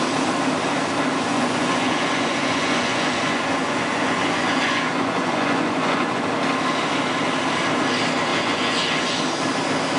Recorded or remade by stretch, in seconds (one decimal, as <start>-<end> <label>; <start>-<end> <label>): 0.0-1.3 recorded; 1.3-6.2 remade; 6.2-8.3 recorded; 8.3-9.2 remade; 9.2-10.0 recorded

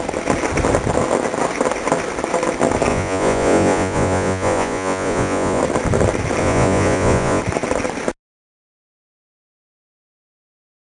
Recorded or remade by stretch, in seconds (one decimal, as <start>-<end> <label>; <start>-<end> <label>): 0.0-2.9 recorded; 2.9-5.6 remade; 5.6-6.4 recorded; 6.4-7.4 remade; 7.4-10.9 recorded

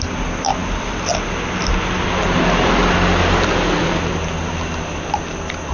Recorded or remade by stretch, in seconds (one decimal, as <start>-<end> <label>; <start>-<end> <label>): 0.0-5.7 recorded

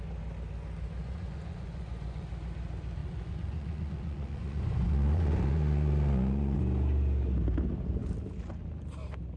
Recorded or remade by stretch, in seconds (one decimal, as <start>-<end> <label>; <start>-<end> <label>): 0.0-1.0 recorded; 1.0-2.3 remade; 2.3-3.0 recorded; 3.0-6.6 remade; 6.6-9.4 recorded